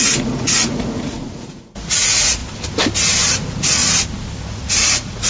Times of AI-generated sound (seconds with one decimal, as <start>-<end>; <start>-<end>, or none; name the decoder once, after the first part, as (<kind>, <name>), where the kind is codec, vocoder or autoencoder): 0.0-2.4 (vocoder, Vocos); 3.3-3.8; 4.5-5.3